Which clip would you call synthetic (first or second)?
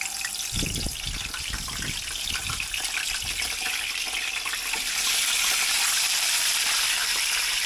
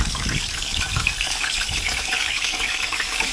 second